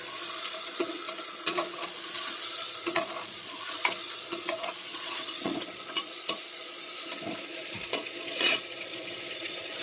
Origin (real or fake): fake